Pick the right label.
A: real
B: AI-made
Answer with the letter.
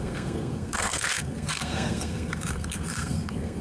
B